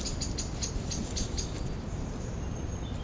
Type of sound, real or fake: real